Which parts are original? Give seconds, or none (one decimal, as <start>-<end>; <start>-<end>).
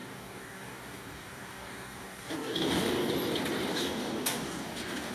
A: 3.1-3.7